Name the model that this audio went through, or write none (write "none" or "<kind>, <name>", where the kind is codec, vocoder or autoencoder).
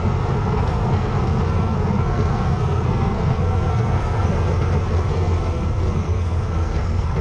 codec, SNAC